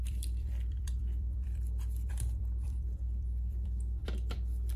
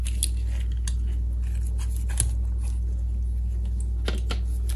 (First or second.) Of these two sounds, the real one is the second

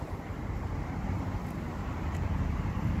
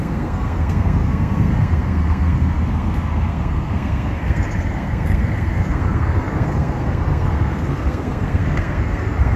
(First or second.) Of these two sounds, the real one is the first